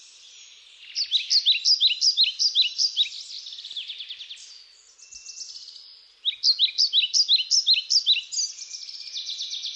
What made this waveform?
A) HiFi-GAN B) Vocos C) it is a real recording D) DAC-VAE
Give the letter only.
C